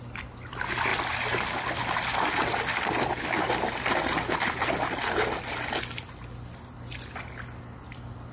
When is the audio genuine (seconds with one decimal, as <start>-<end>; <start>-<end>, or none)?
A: 0.0-8.3